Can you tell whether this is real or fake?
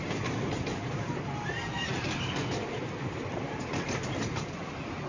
real